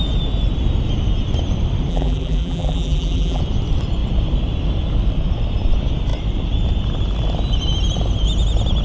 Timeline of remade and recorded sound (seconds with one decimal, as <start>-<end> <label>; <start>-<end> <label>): 0.0-1.9 recorded; 1.9-3.4 remade; 3.4-8.8 recorded